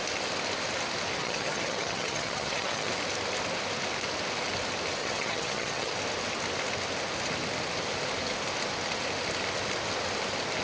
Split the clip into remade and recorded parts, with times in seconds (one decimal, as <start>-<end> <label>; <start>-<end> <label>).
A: 0.0-1.2 recorded; 1.2-2.9 remade; 2.9-5.0 recorded; 5.0-5.9 remade; 5.9-10.6 recorded